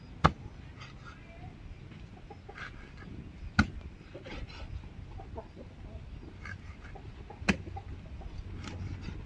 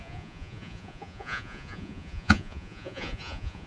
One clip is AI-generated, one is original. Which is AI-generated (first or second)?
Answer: second